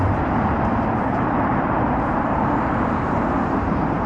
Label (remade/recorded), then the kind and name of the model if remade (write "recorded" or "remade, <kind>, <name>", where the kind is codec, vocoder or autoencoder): remade, vocoder, BigVGAN v2